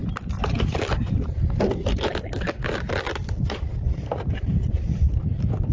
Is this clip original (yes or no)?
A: yes